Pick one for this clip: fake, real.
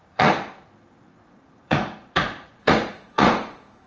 fake